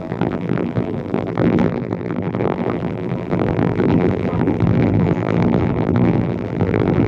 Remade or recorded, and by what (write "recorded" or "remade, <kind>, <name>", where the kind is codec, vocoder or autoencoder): remade, vocoder, BigVGAN v2